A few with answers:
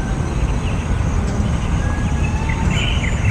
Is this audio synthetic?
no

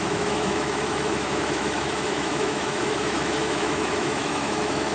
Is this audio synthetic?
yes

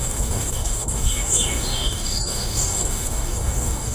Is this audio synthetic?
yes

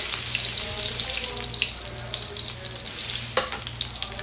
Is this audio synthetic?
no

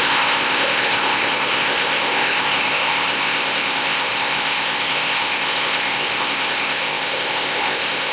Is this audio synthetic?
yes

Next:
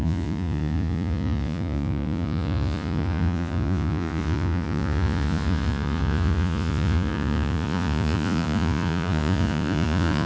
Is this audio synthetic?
yes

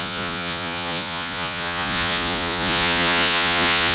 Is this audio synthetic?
yes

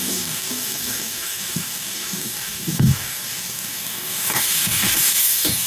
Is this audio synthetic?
yes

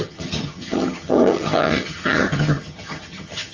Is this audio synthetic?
yes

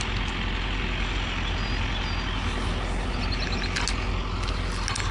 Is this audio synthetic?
no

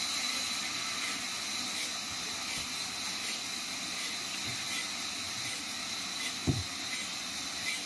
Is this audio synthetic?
no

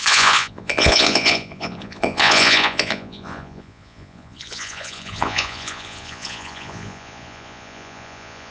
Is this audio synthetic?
yes